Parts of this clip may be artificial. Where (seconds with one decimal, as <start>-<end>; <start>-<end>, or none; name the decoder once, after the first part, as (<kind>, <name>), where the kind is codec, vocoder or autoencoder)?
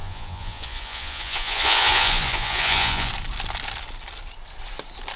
0.0-3.1 (vocoder, Vocos)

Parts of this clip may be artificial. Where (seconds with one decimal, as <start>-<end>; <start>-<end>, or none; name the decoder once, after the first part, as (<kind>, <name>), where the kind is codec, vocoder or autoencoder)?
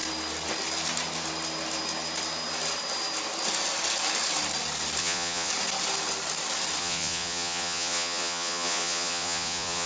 5.0-5.5 (vocoder, Vocos); 6.8-9.9